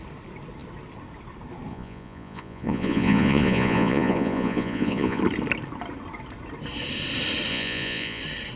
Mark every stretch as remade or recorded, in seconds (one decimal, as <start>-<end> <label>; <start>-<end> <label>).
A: 0.0-1.7 recorded; 1.7-5.2 remade; 5.2-7.5 recorded; 7.5-8.2 remade; 8.2-8.6 recorded